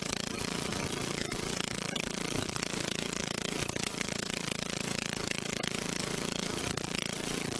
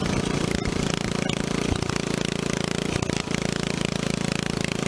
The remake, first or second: first